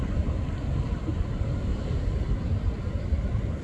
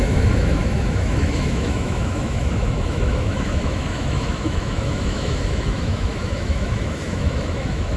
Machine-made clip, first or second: second